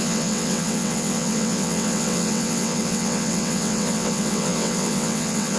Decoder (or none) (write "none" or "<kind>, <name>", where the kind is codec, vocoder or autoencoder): vocoder, WaveNeXt